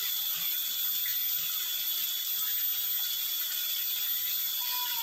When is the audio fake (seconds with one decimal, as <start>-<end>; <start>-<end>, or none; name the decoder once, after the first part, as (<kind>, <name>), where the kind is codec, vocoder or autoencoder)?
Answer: none